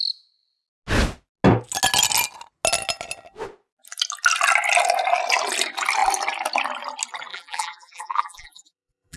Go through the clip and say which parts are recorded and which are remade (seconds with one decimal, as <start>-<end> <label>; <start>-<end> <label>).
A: 0.0-7.3 recorded; 7.3-9.2 remade